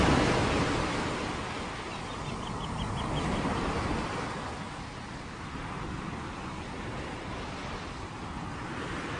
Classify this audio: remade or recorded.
recorded